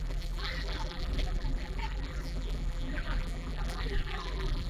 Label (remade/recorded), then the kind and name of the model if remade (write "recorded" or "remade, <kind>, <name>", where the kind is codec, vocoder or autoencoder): remade, vocoder, BigVGAN v2